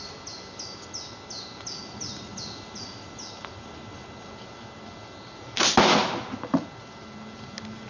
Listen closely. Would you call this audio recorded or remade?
recorded